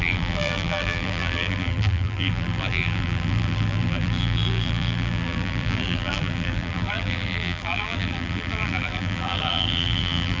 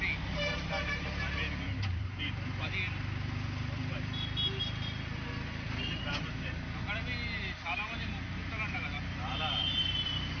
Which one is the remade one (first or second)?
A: first